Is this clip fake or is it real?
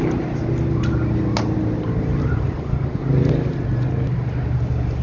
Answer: real